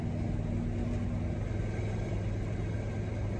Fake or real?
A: real